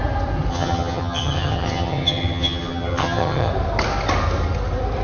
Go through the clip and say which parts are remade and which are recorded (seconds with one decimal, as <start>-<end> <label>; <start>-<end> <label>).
0.0-0.5 recorded; 0.5-3.5 remade; 3.5-5.0 recorded